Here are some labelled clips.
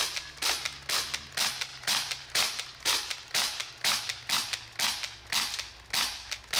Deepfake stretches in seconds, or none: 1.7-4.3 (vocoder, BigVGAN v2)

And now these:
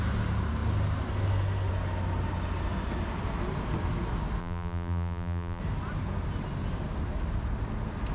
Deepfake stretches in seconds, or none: 4.4-5.6 (vocoder, BigVGAN v2)

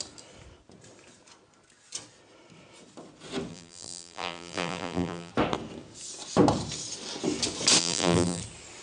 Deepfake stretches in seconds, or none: 3.5-5.3 (vocoder, BigVGAN v2); 7.8-8.4